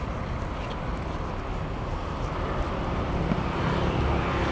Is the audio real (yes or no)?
yes